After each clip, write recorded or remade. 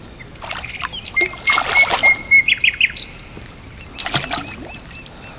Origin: recorded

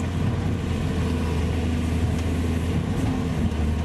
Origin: recorded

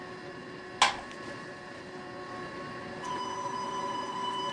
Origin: recorded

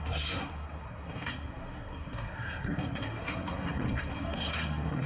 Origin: remade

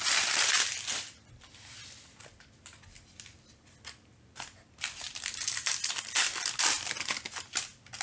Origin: recorded